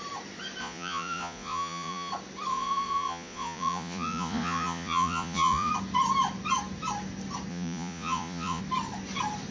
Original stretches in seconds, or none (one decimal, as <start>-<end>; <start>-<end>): 0.0-0.6; 2.1-2.5; 5.7-7.5; 8.6-9.5